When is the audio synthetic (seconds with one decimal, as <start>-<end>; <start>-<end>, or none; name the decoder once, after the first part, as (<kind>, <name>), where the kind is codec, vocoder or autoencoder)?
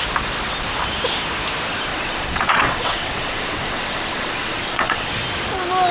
1.9-5.1 (vocoder, WaveNeXt)